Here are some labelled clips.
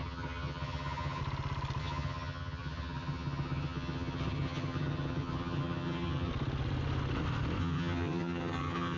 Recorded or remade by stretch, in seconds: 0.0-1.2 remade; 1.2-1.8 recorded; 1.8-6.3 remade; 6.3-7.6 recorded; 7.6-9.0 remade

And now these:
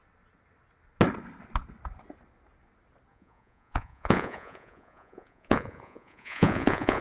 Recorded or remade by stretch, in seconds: 0.0-3.1 recorded; 3.1-7.0 remade

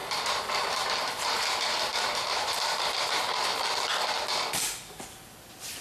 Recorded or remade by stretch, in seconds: 0.0-3.5 remade; 3.5-5.8 recorded

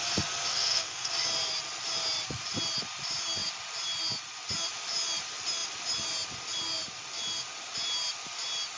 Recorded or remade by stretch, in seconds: 0.0-0.5 recorded; 0.5-1.1 remade; 1.1-8.8 recorded

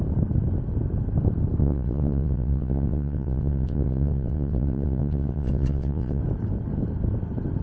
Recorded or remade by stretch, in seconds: 0.0-1.6 recorded; 1.6-6.2 remade; 6.2-7.6 recorded

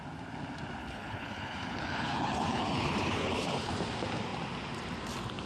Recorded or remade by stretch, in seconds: 0.0-0.8 recorded; 0.8-3.7 remade; 3.7-5.5 recorded

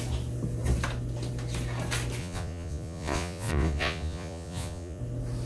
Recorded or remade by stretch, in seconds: 0.0-2.2 recorded; 2.2-5.0 remade; 5.0-5.5 recorded